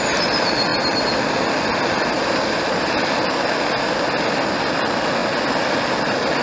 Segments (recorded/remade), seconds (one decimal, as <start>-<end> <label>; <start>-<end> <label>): 0.0-6.4 recorded